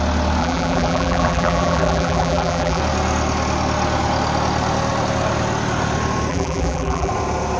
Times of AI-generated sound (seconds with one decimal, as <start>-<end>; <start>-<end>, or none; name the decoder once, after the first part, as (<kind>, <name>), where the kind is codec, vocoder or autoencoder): 0.4-2.8 (vocoder, BigVGAN v2); 6.3-7.1